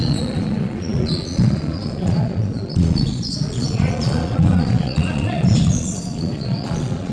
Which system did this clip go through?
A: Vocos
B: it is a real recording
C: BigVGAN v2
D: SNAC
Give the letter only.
A